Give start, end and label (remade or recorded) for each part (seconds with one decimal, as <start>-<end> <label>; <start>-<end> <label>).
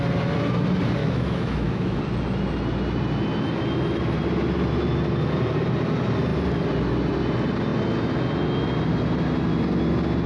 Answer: 0.0-1.0 recorded; 1.0-2.0 remade; 2.0-10.3 recorded